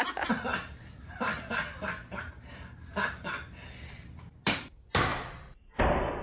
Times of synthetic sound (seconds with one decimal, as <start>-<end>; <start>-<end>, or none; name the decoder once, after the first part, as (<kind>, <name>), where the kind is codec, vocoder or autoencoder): 0.5-4.2 (vocoder, BigVGAN v2); 5.1-5.8